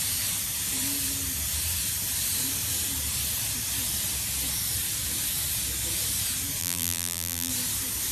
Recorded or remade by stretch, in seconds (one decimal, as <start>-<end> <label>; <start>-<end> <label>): 0.0-6.6 recorded; 6.6-7.5 remade; 7.5-8.1 recorded